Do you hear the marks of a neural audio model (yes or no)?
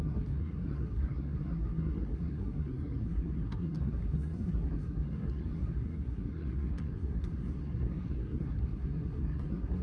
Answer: yes